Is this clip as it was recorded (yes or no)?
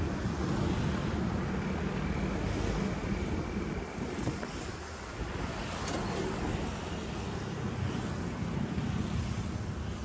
yes